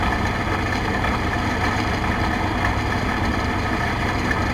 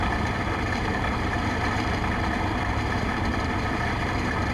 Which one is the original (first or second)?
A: first